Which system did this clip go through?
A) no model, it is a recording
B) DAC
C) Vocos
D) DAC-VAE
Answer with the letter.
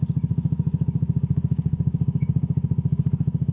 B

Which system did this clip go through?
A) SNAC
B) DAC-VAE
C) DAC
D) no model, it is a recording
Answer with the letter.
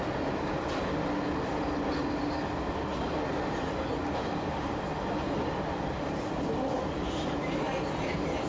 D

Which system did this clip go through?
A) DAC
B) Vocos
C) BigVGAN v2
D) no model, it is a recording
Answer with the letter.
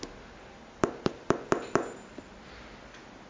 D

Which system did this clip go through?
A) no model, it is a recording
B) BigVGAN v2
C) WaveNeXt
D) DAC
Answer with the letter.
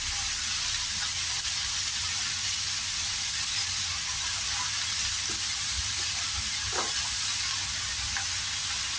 A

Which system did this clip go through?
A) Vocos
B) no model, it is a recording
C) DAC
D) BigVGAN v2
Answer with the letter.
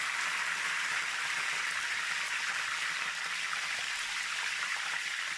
B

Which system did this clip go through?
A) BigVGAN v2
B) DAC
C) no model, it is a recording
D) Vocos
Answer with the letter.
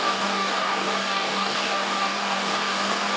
B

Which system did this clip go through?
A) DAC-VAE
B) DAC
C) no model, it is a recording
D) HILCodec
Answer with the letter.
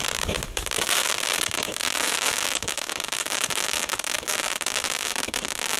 B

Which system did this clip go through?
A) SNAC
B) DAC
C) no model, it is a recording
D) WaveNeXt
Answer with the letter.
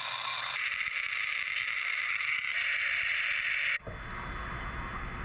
C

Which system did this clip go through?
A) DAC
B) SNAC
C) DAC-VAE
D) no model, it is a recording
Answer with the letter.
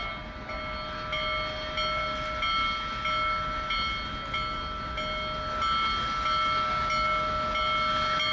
D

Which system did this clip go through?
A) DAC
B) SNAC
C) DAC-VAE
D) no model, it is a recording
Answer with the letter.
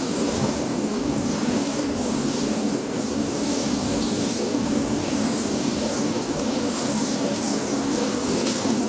A